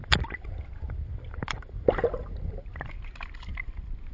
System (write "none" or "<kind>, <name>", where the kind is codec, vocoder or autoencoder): none